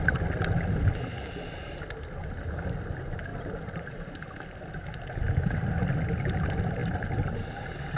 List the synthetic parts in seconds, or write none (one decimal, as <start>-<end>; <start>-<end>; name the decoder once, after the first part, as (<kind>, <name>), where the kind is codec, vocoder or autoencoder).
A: 3.3-5.1 (vocoder, BigVGAN v2)